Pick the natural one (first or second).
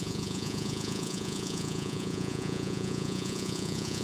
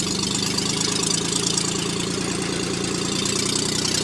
second